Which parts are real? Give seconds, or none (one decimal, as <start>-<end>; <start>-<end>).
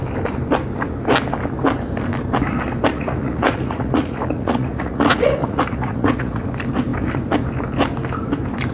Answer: 0.0-2.9; 6.4-8.7